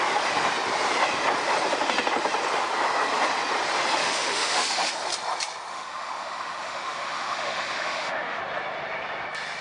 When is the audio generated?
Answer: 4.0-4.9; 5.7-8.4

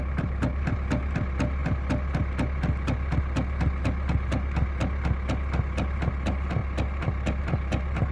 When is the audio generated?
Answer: none

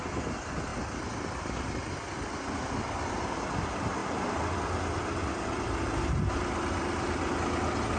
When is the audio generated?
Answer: none

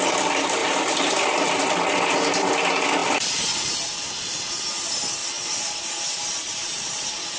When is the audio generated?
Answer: 0.6-1.6; 5.2-5.8; 6.6-7.4

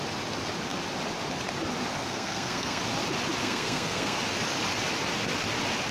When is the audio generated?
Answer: 1.9-2.8; 3.4-4.2